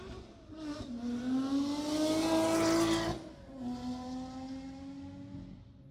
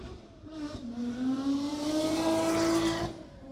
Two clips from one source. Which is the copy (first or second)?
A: second